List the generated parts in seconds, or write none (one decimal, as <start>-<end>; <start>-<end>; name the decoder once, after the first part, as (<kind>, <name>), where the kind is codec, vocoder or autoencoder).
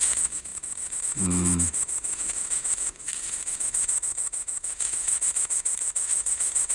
0.0-6.7 (autoencoder, DAC-VAE)